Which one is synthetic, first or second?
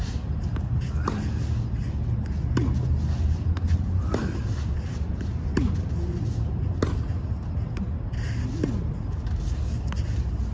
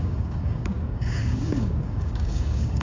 second